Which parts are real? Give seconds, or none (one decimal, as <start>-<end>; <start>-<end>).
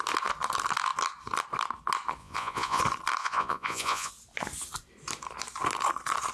0.0-2.2; 2.8-3.2; 4.1-6.3